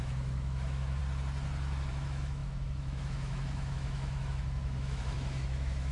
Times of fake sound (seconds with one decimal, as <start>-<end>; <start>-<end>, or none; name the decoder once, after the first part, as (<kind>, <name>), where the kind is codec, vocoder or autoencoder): 0.0-1.0 (autoencoder, DAC-VAE); 1.9-5.9